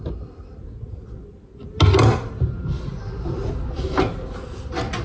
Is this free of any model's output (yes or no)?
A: yes